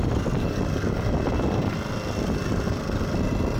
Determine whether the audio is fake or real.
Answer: real